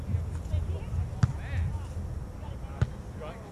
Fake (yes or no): no